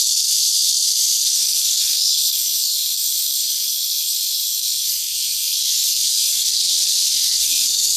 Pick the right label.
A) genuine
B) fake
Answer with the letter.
B